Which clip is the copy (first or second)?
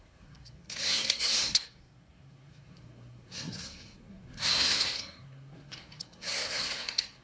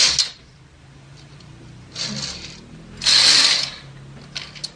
first